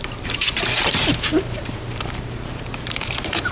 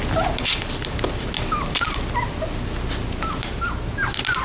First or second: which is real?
second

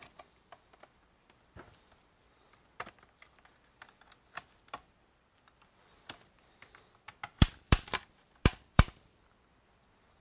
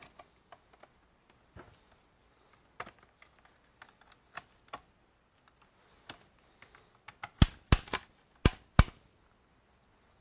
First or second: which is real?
second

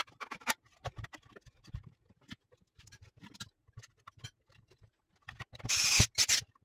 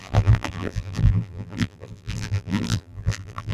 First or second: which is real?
first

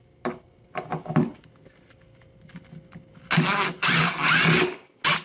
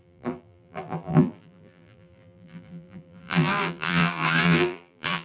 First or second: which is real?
first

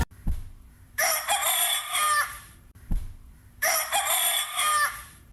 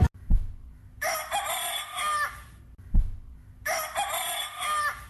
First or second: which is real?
second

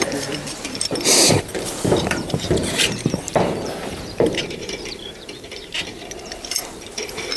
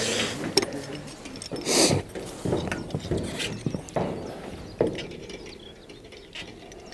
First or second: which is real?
second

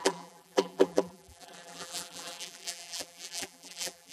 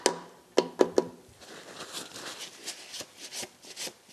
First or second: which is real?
second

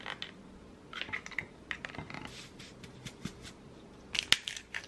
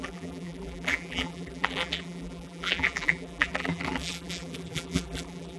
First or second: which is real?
first